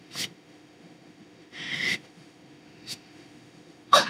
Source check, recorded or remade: remade